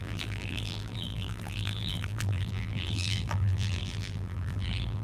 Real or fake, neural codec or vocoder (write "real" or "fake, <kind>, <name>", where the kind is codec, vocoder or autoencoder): fake, vocoder, BigVGAN v2